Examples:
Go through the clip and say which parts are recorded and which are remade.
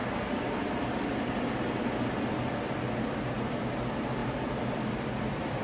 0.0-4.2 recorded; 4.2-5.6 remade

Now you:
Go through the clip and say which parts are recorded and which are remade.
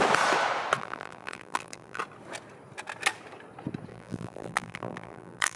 0.0-0.8 recorded; 0.8-2.0 remade; 2.0-3.9 recorded; 3.9-5.6 remade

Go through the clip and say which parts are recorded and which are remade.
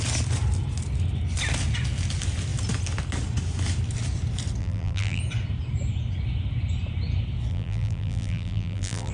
0.0-4.6 recorded; 4.6-5.2 remade; 5.2-7.5 recorded; 7.5-9.1 remade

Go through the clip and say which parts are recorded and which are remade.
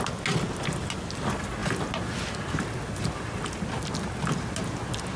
0.0-5.2 recorded